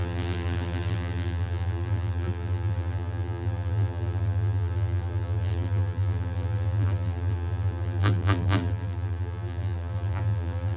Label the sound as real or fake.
fake